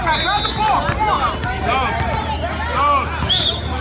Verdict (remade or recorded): recorded